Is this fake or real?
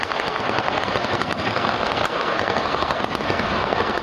fake